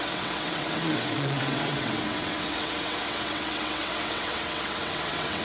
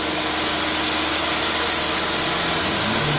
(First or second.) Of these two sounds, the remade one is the first